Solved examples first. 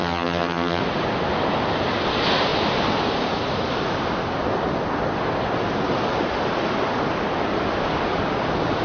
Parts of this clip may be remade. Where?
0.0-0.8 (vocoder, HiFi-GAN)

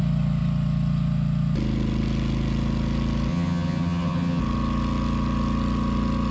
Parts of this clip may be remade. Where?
3.3-4.4 (vocoder, HiFi-GAN)

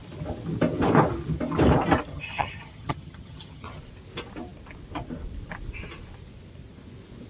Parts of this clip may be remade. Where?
2.1-3.8 (vocoder, HiFi-GAN)